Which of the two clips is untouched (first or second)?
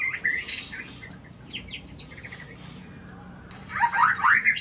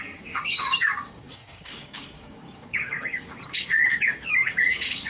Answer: first